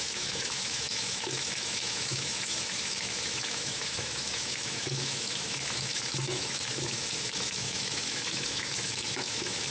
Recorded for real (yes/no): no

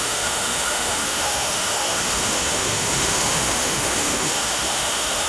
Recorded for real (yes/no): no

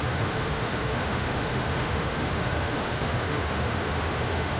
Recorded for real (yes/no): no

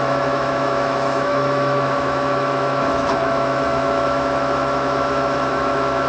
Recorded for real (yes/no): no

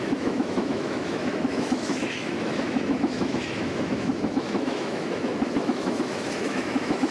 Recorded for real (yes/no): no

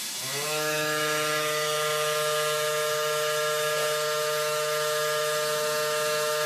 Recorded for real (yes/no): no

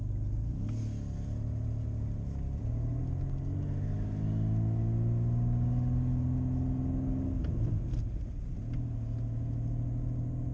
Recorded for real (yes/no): yes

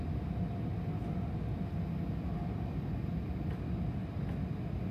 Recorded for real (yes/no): yes